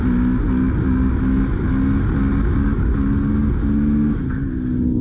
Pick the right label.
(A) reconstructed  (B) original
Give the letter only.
B